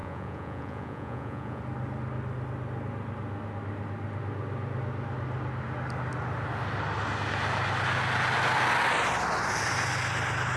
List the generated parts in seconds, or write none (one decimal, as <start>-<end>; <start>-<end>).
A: 0.0-1.6